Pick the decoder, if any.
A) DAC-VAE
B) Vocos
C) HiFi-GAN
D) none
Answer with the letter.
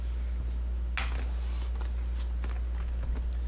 D